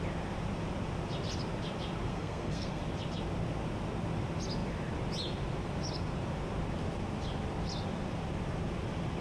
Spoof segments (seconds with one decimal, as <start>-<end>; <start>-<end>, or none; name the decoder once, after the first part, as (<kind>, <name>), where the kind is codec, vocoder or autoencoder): 2.1-2.8 (codec, SNAC)

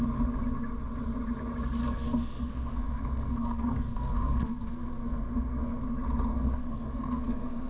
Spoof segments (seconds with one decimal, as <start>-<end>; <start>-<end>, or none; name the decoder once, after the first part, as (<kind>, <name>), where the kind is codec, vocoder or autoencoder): 1.8-5.8 (codec, SNAC); 6.3-7.7

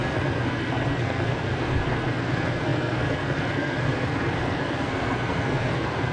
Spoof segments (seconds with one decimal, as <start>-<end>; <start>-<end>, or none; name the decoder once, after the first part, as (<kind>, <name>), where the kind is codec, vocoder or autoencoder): 0.0-6.1 (codec, SNAC)

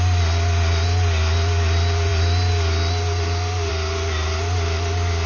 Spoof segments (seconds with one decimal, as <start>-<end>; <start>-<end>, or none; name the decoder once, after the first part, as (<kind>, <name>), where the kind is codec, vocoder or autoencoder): none

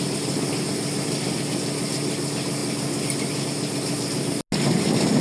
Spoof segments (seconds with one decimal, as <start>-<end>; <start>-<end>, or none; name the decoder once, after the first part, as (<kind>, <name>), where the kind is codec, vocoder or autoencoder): none